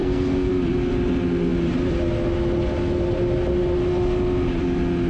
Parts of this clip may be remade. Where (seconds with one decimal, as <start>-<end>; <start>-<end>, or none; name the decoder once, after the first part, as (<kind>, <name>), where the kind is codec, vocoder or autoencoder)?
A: 0.0-0.5 (codec, SNAC)